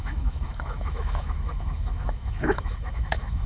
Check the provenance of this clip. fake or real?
fake